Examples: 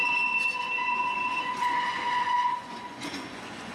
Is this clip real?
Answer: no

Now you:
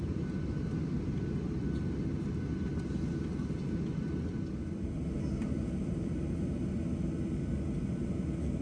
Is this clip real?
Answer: yes